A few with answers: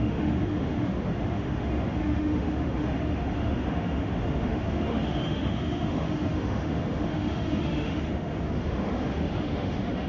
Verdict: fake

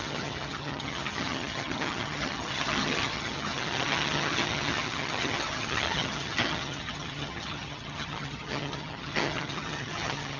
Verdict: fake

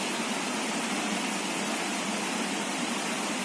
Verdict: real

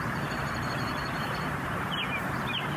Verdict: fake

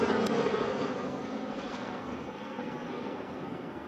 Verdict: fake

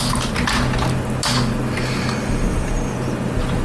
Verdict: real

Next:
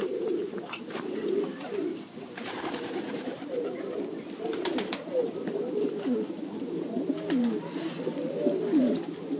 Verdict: fake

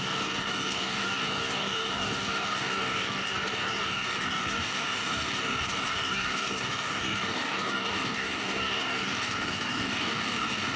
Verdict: fake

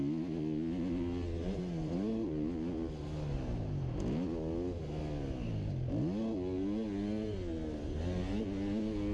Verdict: real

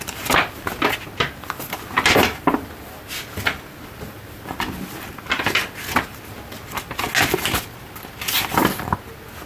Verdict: real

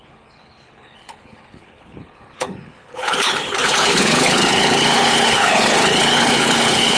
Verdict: fake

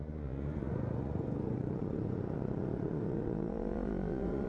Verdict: fake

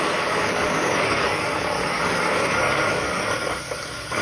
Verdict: fake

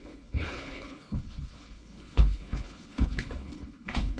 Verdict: fake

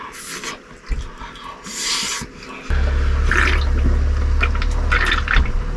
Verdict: real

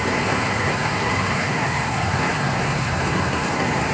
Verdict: fake